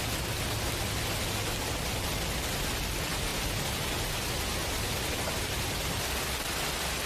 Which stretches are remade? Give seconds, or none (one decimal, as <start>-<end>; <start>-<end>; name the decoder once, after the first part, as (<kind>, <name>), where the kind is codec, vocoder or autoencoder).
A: none